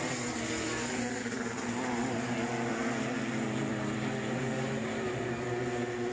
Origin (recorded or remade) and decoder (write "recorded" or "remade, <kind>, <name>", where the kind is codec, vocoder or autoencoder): recorded